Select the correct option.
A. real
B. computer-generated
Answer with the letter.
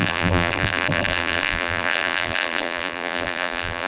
B